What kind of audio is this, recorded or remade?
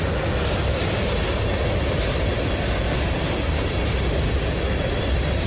recorded